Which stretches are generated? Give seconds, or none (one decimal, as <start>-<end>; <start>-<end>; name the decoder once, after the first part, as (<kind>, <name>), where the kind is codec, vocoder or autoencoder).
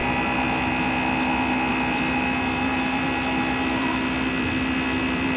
1.7-5.4 (vocoder, BigVGAN v2)